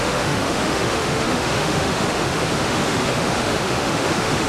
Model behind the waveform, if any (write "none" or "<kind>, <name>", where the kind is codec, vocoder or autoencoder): autoencoder, DAC-VAE